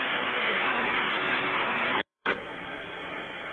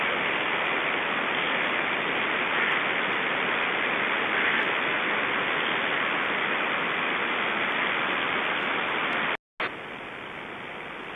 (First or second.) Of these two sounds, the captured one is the second